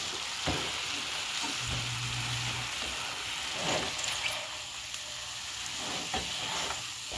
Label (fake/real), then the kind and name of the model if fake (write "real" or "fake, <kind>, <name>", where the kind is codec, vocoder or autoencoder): real